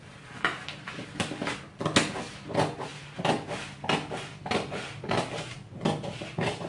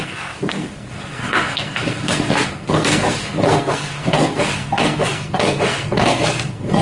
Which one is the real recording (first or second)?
first